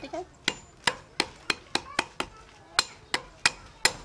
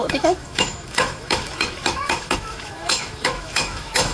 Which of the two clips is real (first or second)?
first